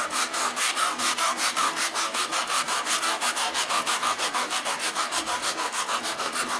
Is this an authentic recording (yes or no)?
no